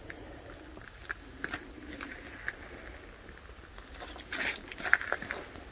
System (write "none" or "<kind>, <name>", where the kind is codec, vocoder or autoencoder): none